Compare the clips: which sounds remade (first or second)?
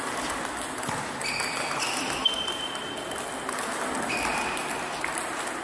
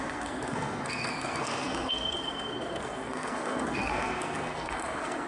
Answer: second